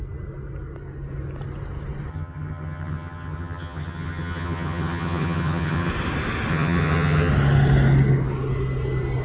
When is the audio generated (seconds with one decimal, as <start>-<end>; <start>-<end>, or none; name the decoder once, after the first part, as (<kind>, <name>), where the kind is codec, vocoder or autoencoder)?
2.1-5.9 (vocoder, HiFi-GAN); 6.5-7.3